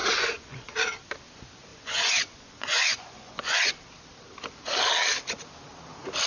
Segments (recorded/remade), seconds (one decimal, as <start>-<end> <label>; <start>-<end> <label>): 0.0-0.7 remade; 0.7-1.7 recorded; 1.7-3.7 remade; 3.7-6.3 recorded